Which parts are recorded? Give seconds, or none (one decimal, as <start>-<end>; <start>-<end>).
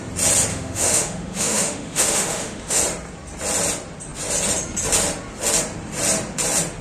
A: 0.0-0.5; 2.8-6.8